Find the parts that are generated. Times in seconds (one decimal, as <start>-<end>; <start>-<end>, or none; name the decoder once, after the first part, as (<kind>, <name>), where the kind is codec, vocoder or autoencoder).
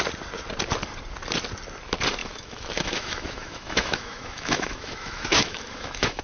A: 2.2-6.2 (autoencoder, DAC-VAE)